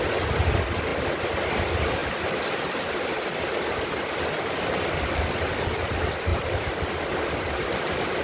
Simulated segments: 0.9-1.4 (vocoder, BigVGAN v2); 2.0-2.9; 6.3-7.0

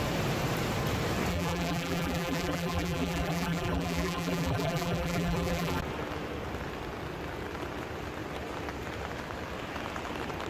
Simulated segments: 1.3-5.8 (vocoder, BigVGAN v2)

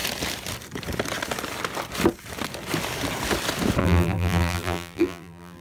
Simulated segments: 3.8-5.6 (vocoder, BigVGAN v2)

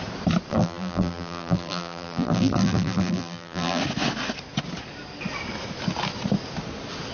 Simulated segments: 0.5-3.8 (vocoder, BigVGAN v2)

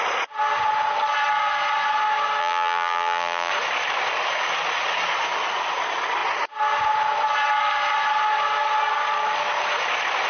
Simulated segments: 2.4-3.5 (vocoder, BigVGAN v2)